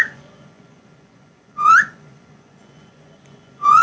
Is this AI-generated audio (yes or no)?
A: yes